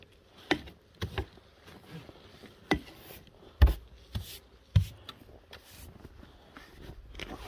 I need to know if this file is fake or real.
real